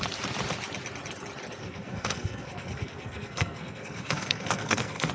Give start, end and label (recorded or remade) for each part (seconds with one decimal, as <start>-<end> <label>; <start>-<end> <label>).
0.0-1.6 recorded; 1.6-5.1 remade